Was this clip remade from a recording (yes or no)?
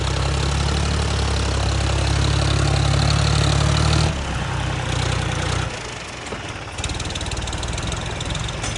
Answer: no